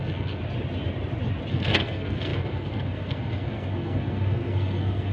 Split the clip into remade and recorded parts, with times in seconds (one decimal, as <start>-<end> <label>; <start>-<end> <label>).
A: 0.0-0.4 remade; 0.4-1.5 recorded; 1.5-5.1 remade